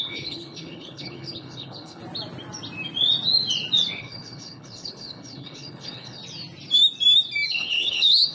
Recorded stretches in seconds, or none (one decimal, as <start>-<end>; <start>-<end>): 2.0-4.0; 6.2-7.5